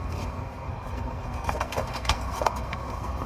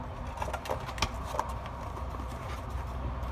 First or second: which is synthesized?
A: first